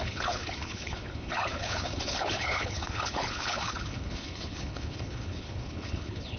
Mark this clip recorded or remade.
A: remade